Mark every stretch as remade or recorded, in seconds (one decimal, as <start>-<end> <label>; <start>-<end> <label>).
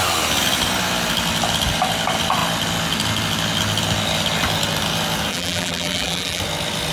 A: 0.0-5.3 recorded; 5.3-6.4 remade; 6.4-6.9 recorded